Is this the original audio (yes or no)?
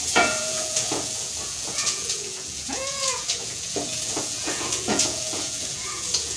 no